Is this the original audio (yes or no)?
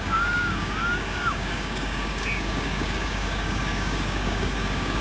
no